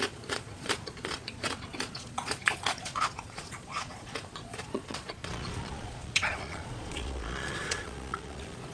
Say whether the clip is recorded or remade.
remade